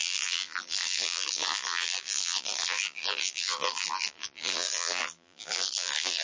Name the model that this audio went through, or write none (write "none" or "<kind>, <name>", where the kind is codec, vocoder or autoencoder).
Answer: vocoder, BigVGAN v2